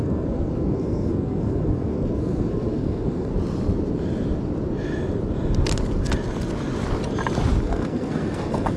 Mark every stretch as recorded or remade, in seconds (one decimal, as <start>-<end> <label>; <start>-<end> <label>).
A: 0.0-3.3 remade; 3.3-7.6 recorded; 7.6-8.8 remade